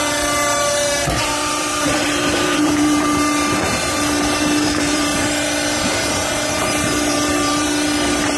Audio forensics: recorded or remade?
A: remade